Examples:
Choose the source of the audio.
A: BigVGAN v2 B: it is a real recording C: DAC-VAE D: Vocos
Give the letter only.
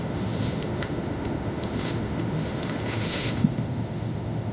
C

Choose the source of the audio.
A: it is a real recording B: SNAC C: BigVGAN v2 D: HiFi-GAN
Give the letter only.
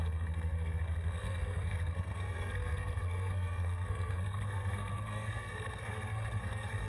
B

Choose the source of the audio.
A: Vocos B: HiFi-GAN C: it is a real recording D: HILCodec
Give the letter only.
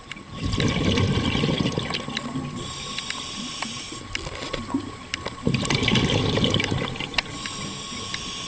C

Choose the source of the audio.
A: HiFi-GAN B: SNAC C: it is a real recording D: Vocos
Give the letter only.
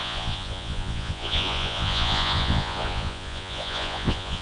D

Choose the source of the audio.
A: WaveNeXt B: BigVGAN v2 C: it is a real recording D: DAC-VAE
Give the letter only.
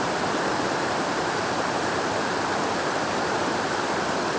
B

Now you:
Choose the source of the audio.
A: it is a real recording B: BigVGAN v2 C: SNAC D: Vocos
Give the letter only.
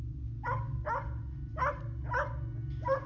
A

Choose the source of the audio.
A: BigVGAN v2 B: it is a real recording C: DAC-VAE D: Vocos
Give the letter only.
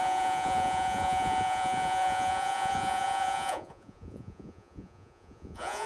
D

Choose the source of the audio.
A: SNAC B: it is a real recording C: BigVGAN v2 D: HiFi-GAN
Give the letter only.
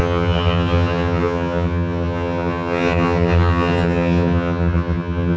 D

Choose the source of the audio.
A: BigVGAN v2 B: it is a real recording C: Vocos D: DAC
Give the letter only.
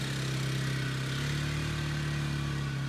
B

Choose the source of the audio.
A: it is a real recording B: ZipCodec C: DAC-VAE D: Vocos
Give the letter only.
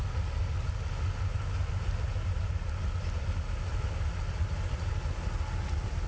A